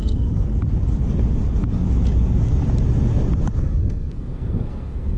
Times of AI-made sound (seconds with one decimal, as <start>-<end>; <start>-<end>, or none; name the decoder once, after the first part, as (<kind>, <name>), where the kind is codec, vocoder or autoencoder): 0.0-0.5 (codec, SNAC); 3.6-5.2